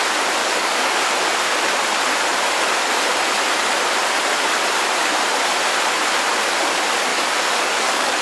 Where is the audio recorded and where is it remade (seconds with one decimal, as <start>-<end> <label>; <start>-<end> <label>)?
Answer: 0.0-0.4 recorded; 0.4-1.1 remade; 1.1-7.1 recorded; 7.1-8.2 remade

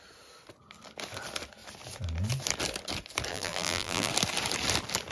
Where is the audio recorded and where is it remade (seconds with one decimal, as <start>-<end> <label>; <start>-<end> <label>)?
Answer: 0.0-3.3 recorded; 3.3-4.1 remade; 4.1-5.1 recorded

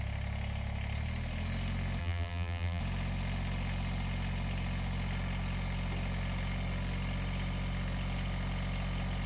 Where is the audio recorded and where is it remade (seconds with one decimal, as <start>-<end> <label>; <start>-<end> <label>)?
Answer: 0.0-2.0 recorded; 2.0-2.8 remade; 2.8-9.3 recorded

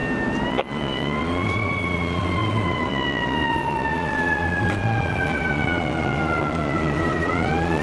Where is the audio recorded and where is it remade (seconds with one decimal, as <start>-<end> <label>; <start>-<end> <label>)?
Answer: 0.0-0.5 recorded; 0.5-7.8 remade

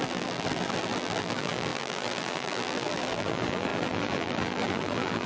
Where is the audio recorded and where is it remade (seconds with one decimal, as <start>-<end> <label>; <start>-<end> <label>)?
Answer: 0.0-5.3 remade

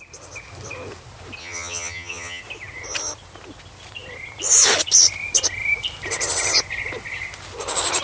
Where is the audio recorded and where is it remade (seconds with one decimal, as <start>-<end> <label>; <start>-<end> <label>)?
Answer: 0.0-1.4 recorded; 1.4-2.4 remade; 2.4-8.0 recorded